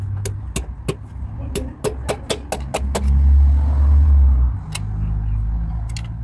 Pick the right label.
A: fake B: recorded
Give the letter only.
B